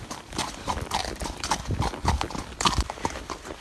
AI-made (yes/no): yes